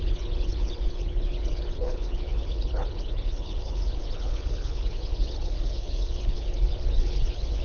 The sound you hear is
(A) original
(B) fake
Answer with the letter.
B